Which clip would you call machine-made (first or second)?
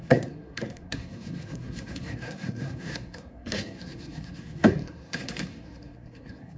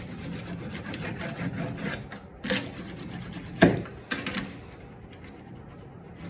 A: first